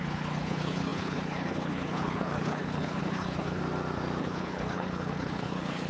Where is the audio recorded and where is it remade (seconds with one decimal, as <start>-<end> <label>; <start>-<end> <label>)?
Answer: 0.0-3.6 remade; 3.6-4.2 recorded; 4.2-5.9 remade